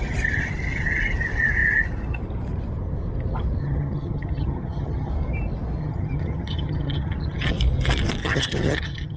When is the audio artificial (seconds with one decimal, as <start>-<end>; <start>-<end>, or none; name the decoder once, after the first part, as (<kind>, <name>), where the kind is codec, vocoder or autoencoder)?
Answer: 3.6-5.1 (vocoder, HiFi-GAN); 5.8-7.5; 8.2-9.2